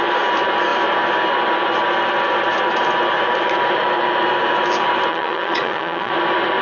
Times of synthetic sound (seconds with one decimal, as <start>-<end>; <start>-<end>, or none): 5.1-6.1